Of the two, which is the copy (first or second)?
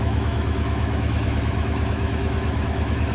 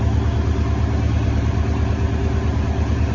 first